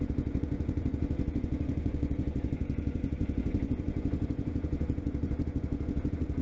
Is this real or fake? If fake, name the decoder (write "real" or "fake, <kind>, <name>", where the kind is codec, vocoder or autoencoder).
fake, vocoder, Vocos